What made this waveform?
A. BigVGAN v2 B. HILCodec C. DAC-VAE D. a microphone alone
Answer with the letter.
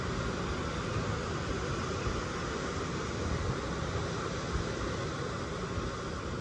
D